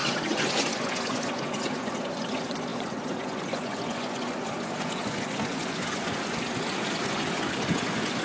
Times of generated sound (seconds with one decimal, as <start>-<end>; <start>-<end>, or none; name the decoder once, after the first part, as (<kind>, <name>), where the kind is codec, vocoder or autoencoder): 0.0-8.2 (vocoder, Vocos)